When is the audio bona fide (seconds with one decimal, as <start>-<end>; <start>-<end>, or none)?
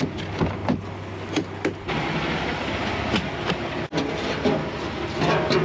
0.0-5.6